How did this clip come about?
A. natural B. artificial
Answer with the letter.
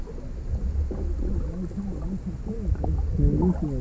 A